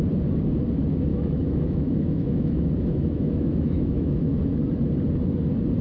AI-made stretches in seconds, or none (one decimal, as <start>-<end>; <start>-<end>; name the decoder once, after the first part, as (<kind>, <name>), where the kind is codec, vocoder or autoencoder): 1.1-4.6 (autoencoder, DAC-VAE)